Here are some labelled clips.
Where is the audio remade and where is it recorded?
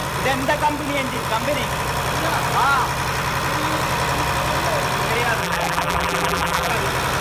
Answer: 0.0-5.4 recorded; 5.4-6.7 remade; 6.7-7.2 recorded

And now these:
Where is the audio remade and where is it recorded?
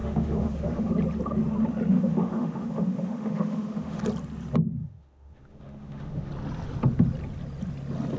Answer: 0.0-0.9 remade; 0.9-1.9 recorded; 1.9-4.0 remade; 4.0-4.8 recorded; 4.8-6.3 remade; 6.3-8.2 recorded